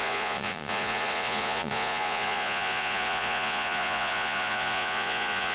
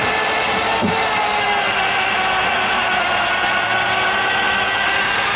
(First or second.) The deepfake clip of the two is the first